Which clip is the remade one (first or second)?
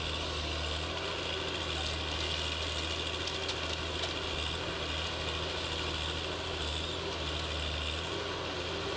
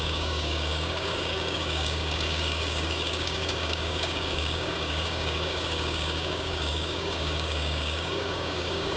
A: second